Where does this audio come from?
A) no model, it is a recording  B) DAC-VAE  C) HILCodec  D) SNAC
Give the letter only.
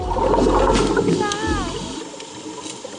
A